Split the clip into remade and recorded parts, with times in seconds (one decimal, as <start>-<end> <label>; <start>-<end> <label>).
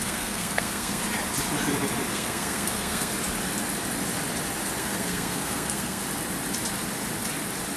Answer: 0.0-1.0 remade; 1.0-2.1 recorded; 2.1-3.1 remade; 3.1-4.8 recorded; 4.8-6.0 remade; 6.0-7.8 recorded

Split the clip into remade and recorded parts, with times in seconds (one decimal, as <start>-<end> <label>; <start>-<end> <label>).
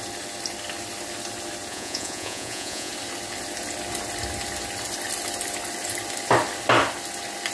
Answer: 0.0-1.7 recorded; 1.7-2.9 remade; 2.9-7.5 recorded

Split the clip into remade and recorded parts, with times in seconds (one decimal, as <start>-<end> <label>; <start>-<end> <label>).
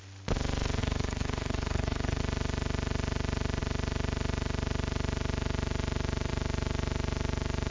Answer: 0.0-0.8 recorded; 0.8-2.2 remade; 2.2-7.7 recorded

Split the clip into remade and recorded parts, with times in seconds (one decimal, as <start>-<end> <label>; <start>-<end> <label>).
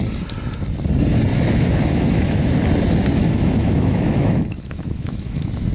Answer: 0.0-1.3 recorded; 1.3-2.5 remade; 2.5-3.2 recorded; 3.2-5.7 remade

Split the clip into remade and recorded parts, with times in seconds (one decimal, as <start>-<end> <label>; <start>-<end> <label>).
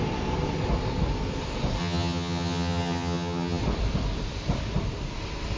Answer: 0.0-1.8 recorded; 1.8-3.6 remade; 3.6-5.6 recorded